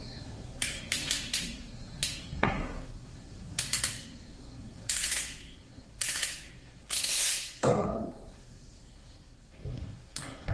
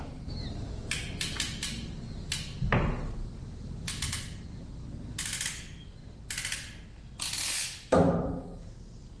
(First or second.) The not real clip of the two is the first